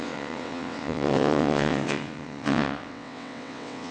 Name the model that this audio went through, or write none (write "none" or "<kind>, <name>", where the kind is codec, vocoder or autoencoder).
vocoder, WaveNeXt